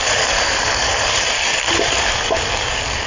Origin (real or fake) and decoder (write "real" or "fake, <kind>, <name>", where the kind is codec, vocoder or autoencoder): fake, codec, DAC